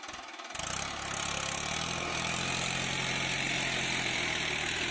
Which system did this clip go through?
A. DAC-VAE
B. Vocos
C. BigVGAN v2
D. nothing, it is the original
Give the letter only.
D